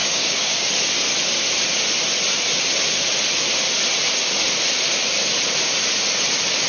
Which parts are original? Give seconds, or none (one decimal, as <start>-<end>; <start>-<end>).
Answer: 0.7-6.7